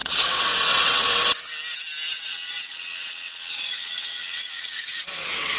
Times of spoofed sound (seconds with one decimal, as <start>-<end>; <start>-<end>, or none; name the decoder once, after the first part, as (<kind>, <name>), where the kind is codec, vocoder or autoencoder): 0.0-1.4 (vocoder, WaveNeXt); 2.1-5.6